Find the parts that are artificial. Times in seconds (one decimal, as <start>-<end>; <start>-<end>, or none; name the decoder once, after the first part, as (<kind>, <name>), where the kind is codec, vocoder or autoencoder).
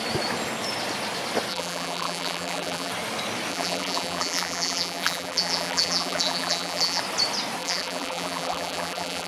1.5-2.9 (vocoder, BigVGAN v2); 3.5-7.0; 7.6-9.3